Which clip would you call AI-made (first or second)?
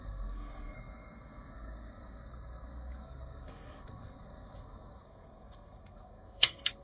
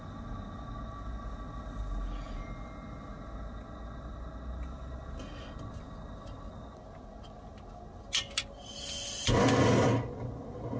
first